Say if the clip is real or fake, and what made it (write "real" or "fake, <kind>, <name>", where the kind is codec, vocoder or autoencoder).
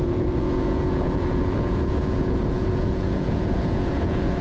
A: fake, vocoder, Vocos